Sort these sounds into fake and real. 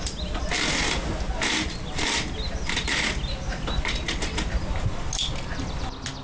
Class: real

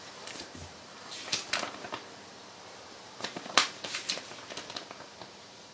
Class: fake